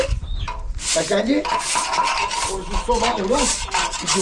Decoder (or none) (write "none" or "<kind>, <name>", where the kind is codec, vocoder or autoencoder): none